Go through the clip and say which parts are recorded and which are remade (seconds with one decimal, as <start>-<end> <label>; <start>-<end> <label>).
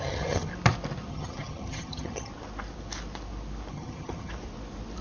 0.0-0.5 remade; 0.5-1.1 recorded; 1.1-2.3 remade; 2.3-3.7 recorded; 3.7-4.3 remade; 4.3-5.0 recorded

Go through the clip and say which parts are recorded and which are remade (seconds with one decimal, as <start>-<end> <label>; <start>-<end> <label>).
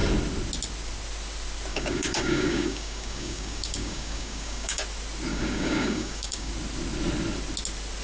0.0-1.7 recorded; 1.7-4.8 remade; 4.8-5.3 recorded; 5.3-6.5 remade; 6.5-8.0 recorded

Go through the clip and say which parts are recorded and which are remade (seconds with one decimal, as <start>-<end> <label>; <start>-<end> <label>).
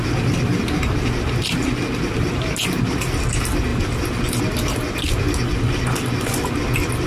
0.0-7.1 recorded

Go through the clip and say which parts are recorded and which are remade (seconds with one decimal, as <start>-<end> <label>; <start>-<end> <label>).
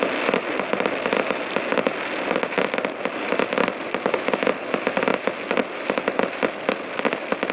0.0-7.5 recorded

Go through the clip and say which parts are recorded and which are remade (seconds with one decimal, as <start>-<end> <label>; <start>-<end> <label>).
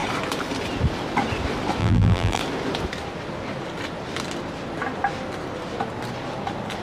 0.0-1.8 recorded; 1.8-2.4 remade; 2.4-6.8 recorded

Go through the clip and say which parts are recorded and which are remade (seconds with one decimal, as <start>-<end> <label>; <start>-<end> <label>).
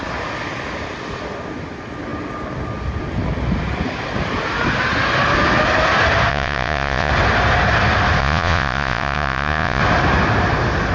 0.0-6.3 recorded; 6.3-7.1 remade; 7.1-8.2 recorded; 8.2-9.8 remade; 9.8-10.9 recorded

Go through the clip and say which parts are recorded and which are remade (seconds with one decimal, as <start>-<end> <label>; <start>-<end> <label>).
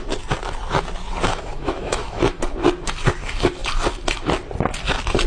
0.0-1.3 recorded; 1.3-2.4 remade; 2.4-5.3 recorded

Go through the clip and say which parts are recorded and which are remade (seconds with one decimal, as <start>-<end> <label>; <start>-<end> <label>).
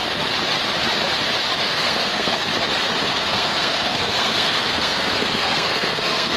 0.0-1.6 recorded; 1.6-2.5 remade; 2.5-3.1 recorded; 3.1-6.4 remade